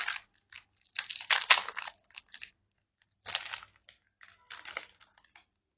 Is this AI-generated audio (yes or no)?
no